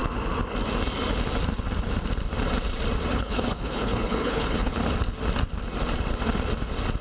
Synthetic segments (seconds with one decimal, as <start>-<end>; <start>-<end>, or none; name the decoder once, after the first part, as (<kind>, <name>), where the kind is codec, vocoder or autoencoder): 3.1-4.8 (codec, HILCodec)